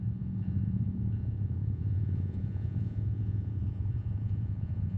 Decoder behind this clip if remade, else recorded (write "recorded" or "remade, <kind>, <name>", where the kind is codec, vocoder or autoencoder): remade, vocoder, Vocos